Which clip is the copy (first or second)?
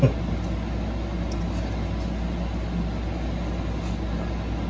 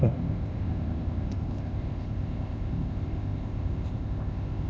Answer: second